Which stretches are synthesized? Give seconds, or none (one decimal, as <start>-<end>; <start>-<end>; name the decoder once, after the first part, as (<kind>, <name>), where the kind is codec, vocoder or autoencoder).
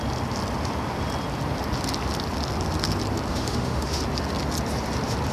3.3-4.0 (autoencoder, DAC-VAE)